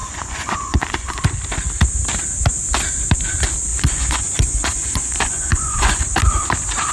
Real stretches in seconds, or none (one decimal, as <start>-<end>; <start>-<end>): 1.2-3.7; 6.0-6.9